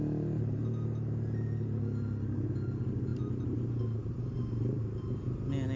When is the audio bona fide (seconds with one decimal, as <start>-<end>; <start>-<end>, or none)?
0.0-5.8